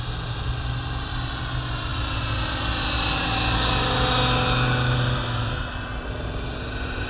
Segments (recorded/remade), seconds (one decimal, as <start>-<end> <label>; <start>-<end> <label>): 0.0-7.1 recorded